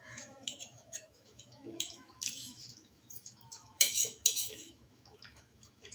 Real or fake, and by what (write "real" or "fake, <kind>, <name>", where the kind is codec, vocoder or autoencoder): fake, autoencoder, DAC-VAE